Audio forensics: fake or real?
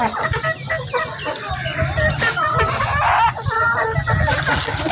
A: real